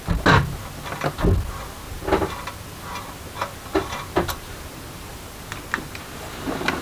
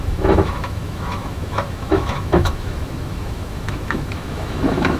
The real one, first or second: first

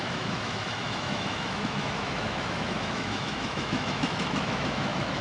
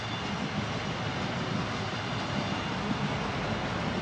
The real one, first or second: second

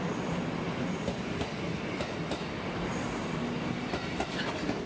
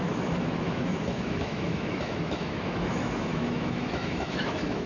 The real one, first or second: first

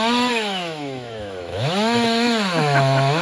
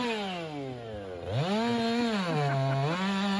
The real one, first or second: second